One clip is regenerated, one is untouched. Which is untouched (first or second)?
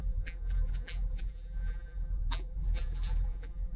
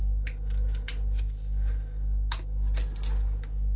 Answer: second